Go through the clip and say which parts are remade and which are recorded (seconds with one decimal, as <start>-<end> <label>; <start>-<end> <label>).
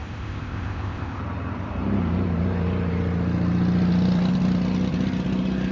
0.0-1.2 remade; 1.2-5.7 recorded